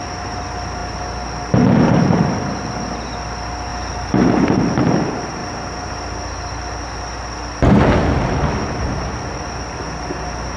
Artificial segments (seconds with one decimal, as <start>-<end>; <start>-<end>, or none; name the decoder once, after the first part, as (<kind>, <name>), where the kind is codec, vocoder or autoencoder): none